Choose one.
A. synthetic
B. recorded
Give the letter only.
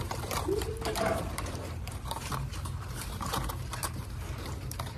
A